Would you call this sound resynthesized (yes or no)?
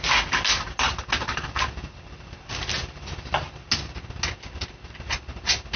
no